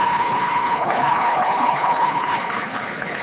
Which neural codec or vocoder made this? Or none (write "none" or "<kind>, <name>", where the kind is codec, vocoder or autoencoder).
codec, HILCodec